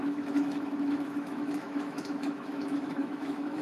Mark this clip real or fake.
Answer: fake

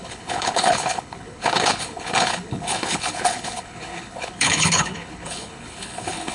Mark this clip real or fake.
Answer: fake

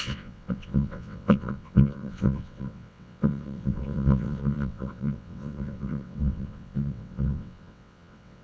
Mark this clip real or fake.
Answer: fake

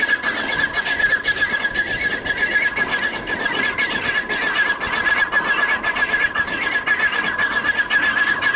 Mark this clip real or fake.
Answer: real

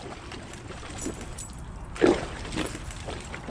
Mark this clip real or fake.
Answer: real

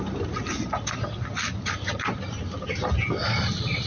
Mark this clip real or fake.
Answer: real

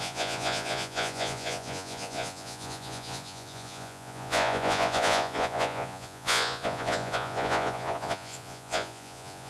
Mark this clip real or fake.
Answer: fake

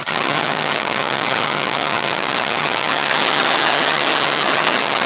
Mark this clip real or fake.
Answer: fake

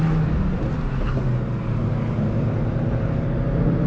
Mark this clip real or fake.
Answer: real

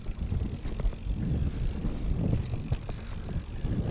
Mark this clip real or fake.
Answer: real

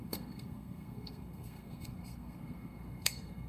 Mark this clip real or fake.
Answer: fake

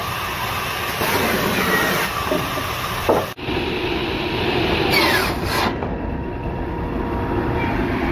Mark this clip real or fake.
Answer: real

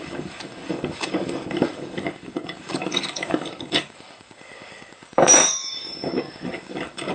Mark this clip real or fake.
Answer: fake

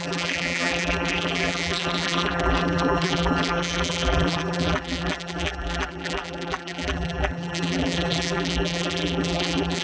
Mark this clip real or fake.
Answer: fake